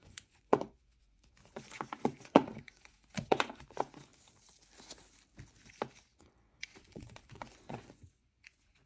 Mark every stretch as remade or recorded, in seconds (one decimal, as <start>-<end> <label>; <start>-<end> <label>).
0.0-4.1 remade; 4.1-6.0 recorded; 6.0-8.9 remade